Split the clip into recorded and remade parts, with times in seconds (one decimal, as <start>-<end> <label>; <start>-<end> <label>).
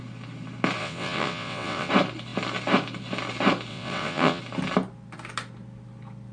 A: 0.0-0.8 recorded; 0.8-1.9 remade; 1.9-3.7 recorded; 3.7-4.4 remade; 4.4-6.3 recorded